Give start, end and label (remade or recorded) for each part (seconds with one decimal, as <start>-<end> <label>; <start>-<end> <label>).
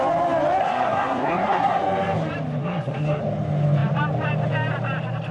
0.0-0.6 recorded; 0.6-1.8 remade; 1.8-2.6 recorded; 2.6-3.2 remade; 3.2-5.3 recorded